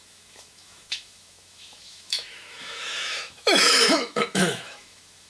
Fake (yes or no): yes